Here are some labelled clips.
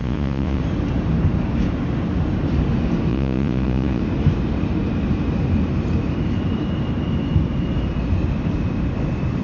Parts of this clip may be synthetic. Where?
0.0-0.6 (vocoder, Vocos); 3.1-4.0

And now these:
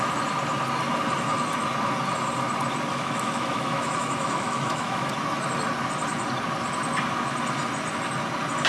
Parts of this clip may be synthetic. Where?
2.9-5.1 (autoencoder, DAC-VAE)

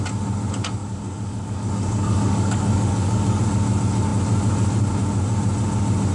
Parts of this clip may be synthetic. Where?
0.8-3.4 (codec, DAC)